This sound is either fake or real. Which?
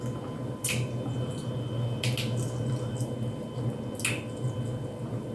real